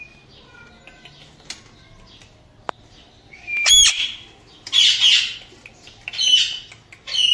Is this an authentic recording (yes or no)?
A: yes